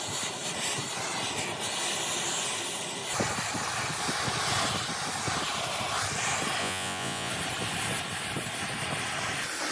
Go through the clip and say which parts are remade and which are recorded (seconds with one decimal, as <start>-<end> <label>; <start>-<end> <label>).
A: 0.0-6.6 recorded; 6.6-7.3 remade; 7.3-9.7 recorded

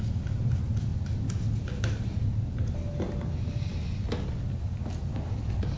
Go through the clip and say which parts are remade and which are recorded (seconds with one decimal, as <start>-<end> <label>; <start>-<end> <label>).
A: 0.0-5.8 recorded